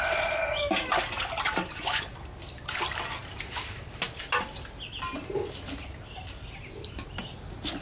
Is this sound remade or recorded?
recorded